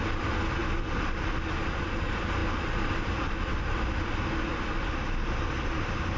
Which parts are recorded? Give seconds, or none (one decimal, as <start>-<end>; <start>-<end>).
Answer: 0.0-6.2